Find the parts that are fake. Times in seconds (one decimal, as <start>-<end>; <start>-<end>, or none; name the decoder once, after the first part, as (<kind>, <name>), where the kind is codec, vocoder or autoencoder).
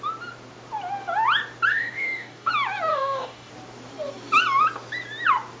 1.7-2.5 (codec, DAC); 2.9-3.5